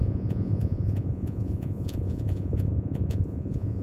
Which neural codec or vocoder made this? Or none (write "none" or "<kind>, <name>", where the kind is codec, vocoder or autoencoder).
vocoder, Vocos